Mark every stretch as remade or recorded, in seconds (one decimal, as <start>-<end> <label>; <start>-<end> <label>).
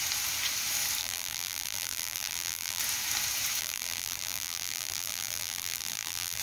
0.0-1.0 recorded; 1.0-2.8 remade; 2.8-3.6 recorded; 3.6-6.4 remade